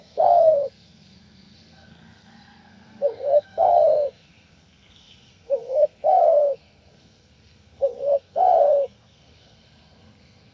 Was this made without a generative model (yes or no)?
no